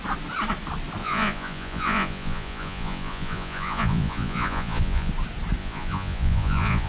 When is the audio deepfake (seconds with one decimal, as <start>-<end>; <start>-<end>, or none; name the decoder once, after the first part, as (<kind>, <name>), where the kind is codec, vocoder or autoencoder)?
1.0-5.1 (vocoder, Vocos); 5.6-6.9

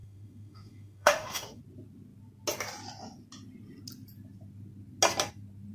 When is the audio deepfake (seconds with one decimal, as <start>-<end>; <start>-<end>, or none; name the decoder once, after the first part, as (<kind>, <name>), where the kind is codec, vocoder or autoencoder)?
0.0-1.6 (autoencoder, DAC-VAE)

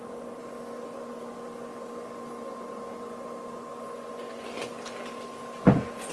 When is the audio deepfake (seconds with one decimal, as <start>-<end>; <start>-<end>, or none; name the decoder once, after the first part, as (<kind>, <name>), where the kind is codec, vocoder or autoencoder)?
none

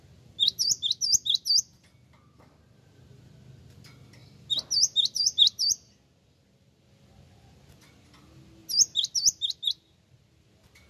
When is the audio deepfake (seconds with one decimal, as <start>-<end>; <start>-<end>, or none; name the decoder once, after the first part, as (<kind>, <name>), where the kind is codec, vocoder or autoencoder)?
none

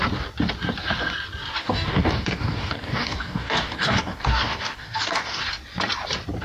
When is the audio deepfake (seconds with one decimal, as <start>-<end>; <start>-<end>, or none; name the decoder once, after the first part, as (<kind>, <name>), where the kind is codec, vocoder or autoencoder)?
1.6-5.4 (codec, DAC)